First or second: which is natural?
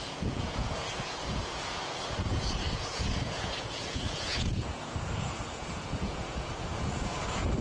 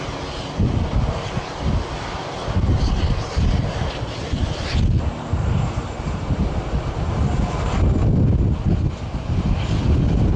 second